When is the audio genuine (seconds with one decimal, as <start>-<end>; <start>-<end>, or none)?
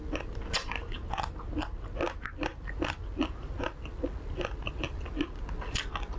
0.0-2.5; 5.1-6.2